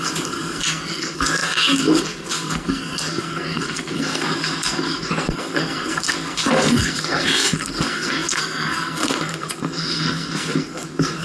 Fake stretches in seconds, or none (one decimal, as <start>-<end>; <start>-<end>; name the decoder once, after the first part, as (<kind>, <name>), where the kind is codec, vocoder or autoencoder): 0.0-11.2 (codec, SNAC)